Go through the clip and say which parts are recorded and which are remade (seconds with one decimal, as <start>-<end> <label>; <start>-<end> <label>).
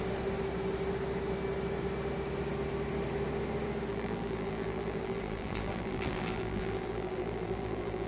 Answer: 0.0-3.9 recorded; 3.9-8.1 remade